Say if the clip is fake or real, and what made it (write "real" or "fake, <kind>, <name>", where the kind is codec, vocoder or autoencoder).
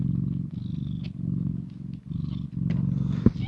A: real